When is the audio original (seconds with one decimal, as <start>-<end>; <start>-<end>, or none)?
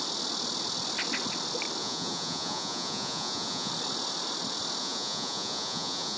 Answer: 0.0-1.8; 3.7-4.8